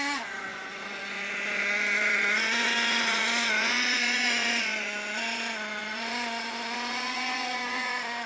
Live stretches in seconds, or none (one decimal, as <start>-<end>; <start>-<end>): none